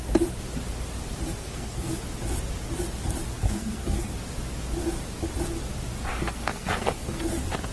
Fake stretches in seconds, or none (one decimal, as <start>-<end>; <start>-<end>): 1.4-2.0; 3.4-4.1; 6.1-7.3

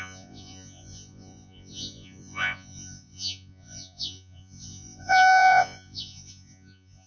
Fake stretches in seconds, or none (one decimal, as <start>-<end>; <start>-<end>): 0.0-7.1

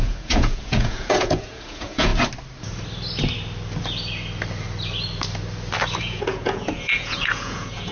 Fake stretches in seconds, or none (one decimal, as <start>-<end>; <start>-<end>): 0.0-2.1; 6.0-7.9

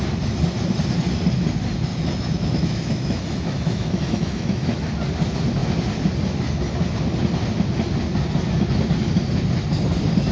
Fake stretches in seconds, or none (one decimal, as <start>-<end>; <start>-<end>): 1.9-4.9

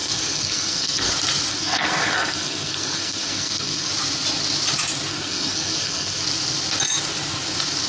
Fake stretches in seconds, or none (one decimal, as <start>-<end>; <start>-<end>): 0.0-1.1; 1.5-3.9; 5.1-6.2

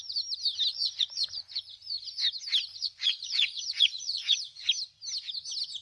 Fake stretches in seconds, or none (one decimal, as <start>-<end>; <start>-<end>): 0.7-2.1; 2.7-4.7